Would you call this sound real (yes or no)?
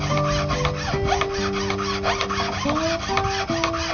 yes